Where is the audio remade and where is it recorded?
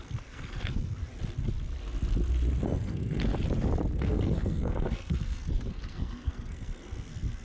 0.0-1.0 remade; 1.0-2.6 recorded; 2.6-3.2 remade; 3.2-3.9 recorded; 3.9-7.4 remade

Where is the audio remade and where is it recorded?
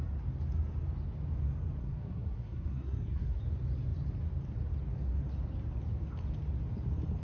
0.0-1.8 recorded; 1.8-3.4 remade; 3.4-7.2 recorded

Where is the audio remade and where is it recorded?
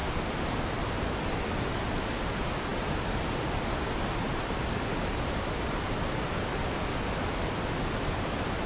0.0-8.7 recorded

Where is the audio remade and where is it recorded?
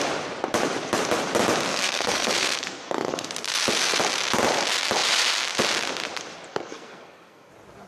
0.0-1.7 recorded; 1.7-3.3 remade; 3.3-6.5 recorded; 6.5-7.5 remade; 7.5-7.9 recorded